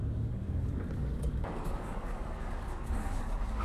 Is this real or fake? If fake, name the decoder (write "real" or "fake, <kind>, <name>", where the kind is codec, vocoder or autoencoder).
fake, codec, DAC